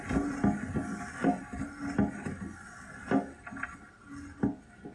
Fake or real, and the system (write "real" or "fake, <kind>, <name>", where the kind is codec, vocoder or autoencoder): real